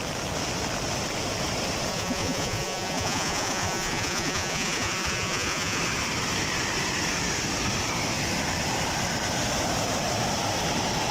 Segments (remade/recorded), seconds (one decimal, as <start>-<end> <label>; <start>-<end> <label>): 0.0-1.9 recorded; 1.9-5.8 remade; 5.8-11.1 recorded